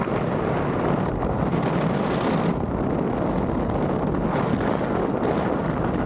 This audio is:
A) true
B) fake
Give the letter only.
A